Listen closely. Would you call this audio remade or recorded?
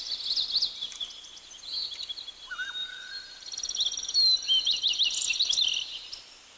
recorded